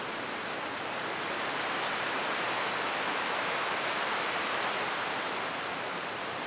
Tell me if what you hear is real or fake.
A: real